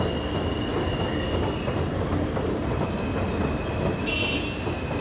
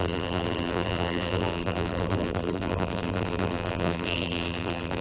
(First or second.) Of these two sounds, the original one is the first